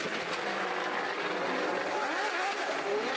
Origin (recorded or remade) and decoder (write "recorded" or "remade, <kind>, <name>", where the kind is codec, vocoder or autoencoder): recorded